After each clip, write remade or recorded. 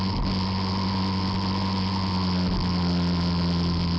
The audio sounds recorded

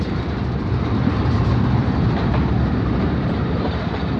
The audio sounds remade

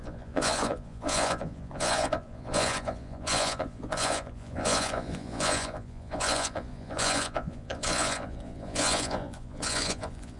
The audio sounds remade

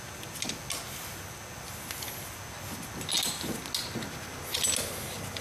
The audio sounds recorded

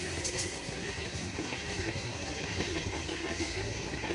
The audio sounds remade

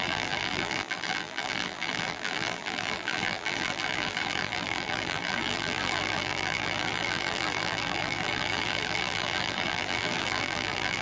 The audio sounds remade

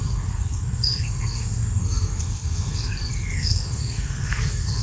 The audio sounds remade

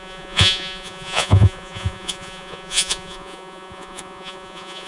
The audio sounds remade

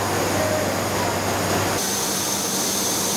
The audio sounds recorded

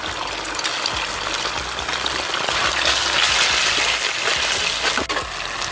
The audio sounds recorded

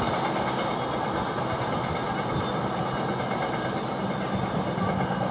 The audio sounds recorded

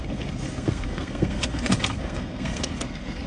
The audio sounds remade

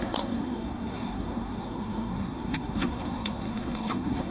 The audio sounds remade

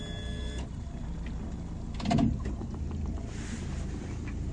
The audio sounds recorded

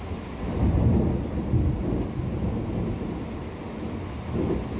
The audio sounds recorded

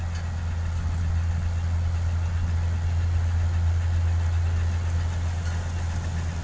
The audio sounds recorded